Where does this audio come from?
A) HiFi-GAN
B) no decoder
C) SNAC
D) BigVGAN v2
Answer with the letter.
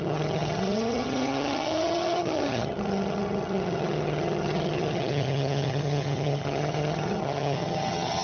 A